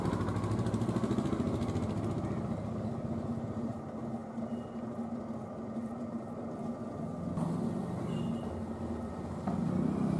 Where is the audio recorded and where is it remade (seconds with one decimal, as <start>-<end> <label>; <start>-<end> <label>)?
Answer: 0.0-10.2 recorded